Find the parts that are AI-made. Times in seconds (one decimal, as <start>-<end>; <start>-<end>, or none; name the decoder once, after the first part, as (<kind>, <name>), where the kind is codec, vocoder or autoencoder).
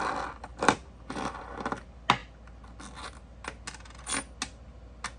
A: 0.5-1.5 (vocoder, BigVGAN v2)